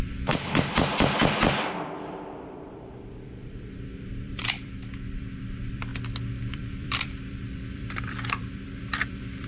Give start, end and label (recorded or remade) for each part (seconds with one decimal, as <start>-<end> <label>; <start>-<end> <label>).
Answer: 0.0-5.9 remade; 5.9-6.4 recorded; 6.4-9.5 remade